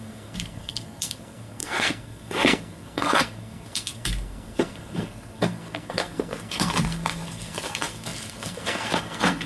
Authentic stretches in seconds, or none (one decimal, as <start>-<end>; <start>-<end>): none